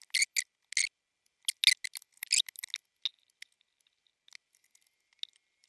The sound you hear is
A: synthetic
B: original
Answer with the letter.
B